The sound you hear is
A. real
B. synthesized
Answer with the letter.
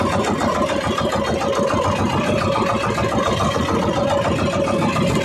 A